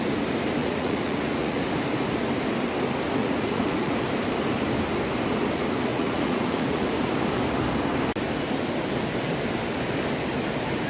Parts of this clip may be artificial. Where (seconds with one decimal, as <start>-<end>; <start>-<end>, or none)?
0.6-1.7; 3.2-3.9; 5.9-6.9